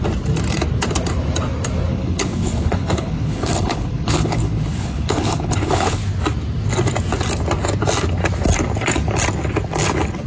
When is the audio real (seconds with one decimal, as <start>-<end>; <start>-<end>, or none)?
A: 0.0-1.9; 6.0-10.3